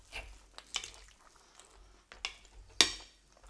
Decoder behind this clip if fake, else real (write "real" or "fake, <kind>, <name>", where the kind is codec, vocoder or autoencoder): real